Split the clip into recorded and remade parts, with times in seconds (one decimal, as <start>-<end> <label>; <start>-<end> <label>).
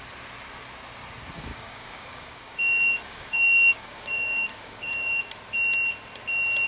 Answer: 0.0-1.5 recorded; 1.5-5.3 remade; 5.3-6.7 recorded